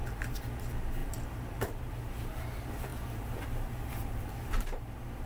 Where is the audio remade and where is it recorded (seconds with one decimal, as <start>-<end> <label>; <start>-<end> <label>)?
0.0-5.3 remade